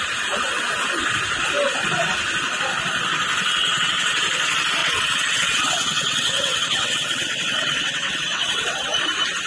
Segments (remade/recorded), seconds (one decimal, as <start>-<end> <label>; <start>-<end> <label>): 0.0-3.6 recorded; 3.6-4.2 remade; 4.2-4.8 recorded; 4.8-9.0 remade; 9.0-9.5 recorded